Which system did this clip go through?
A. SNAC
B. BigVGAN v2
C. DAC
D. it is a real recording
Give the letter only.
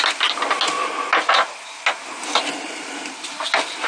D